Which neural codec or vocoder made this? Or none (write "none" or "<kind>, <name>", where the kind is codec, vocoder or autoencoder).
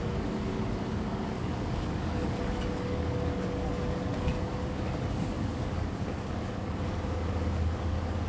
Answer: codec, DAC